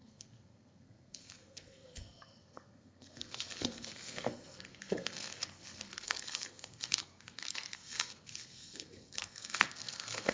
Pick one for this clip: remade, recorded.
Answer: remade